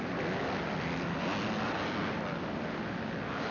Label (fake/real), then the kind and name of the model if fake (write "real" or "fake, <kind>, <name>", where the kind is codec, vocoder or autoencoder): real